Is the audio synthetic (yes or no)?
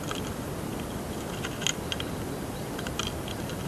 no